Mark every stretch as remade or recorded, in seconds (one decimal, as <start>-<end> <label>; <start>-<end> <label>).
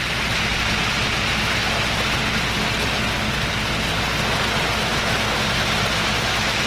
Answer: 0.0-6.7 recorded